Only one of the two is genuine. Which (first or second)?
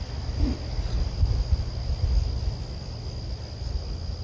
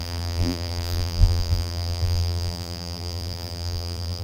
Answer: first